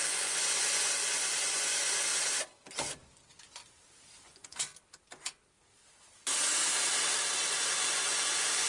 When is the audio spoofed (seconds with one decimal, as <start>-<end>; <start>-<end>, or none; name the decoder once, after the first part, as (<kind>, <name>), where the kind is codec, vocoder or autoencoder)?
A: 0.0-2.1 (vocoder, Vocos); 4.2-4.7; 7.3-8.7